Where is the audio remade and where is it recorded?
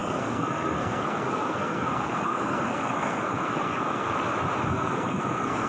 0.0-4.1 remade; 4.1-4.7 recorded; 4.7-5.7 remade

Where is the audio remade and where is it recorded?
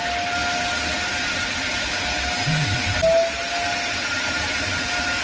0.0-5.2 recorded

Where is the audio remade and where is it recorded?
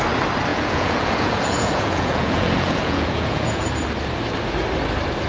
0.0-0.5 recorded; 0.5-3.7 remade; 3.7-5.3 recorded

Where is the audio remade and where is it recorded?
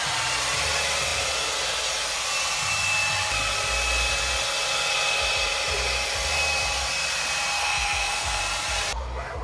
0.0-7.6 recorded; 7.6-8.4 remade; 8.4-9.4 recorded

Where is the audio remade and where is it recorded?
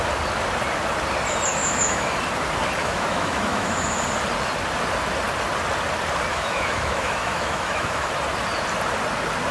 0.0-1.6 recorded; 1.6-2.2 remade; 2.2-2.8 recorded; 2.8-4.0 remade; 4.0-6.3 recorded; 6.3-8.1 remade; 8.1-9.5 recorded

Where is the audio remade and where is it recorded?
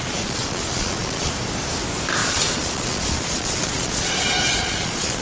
0.0-1.3 remade; 1.3-2.2 recorded; 2.2-4.1 remade; 4.1-4.5 recorded; 4.5-5.2 remade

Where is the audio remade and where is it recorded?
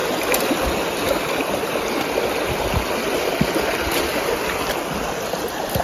0.0-4.1 recorded; 4.1-4.7 remade; 4.7-5.8 recorded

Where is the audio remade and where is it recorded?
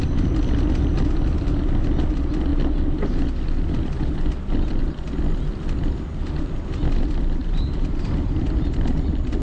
0.0-7.4 recorded; 7.4-8.4 remade; 8.4-9.4 recorded